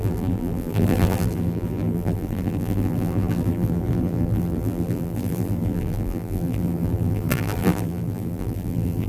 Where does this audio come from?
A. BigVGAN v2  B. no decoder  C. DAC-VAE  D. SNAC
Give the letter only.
A